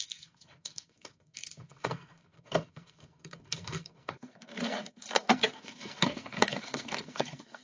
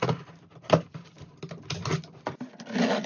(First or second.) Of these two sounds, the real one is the second